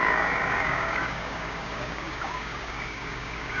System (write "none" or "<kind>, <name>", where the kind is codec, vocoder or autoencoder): codec, DAC